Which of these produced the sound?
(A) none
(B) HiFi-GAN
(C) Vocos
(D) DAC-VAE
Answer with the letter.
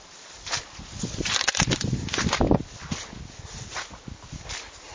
A